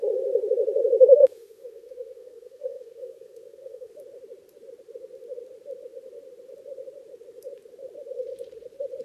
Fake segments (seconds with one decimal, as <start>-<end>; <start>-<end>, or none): 1.2-3.9